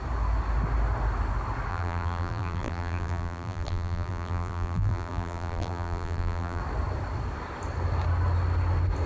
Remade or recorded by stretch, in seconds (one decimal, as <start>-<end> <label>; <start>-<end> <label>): 0.0-1.7 recorded; 1.7-6.6 remade; 6.6-9.1 recorded